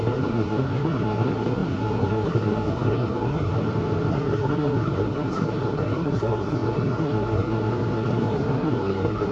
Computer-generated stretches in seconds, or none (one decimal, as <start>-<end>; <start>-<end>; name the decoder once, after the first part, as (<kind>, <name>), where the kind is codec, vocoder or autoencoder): 0.0-3.5 (codec, SNAC); 4.1-9.3